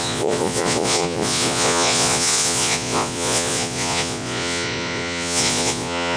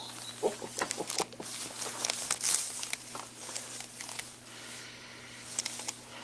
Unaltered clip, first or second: second